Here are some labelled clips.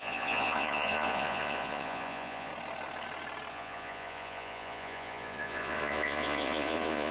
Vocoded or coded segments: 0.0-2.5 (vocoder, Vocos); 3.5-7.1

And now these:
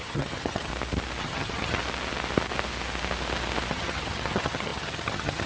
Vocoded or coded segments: 0.0-0.7 (vocoder, HiFi-GAN); 1.2-1.8; 3.7-5.5

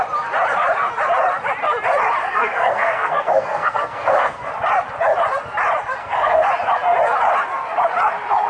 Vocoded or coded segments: 2.2-4.5 (codec, SNAC); 6.0-6.5